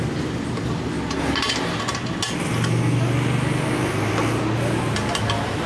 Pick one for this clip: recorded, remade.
recorded